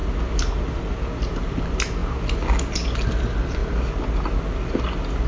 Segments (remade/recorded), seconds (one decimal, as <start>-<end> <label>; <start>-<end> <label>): 0.0-5.3 recorded